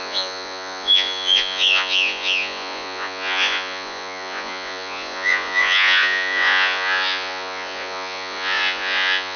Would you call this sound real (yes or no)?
no